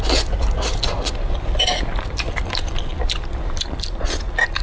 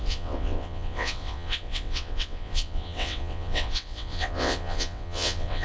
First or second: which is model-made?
second